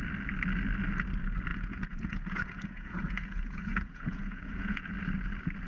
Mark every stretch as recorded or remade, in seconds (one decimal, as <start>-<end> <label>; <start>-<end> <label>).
0.0-1.5 recorded; 1.5-4.9 remade; 4.9-5.7 recorded